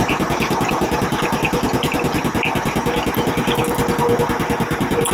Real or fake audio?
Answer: real